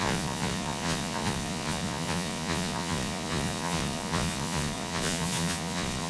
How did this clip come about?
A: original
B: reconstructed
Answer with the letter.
B